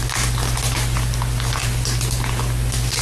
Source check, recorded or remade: recorded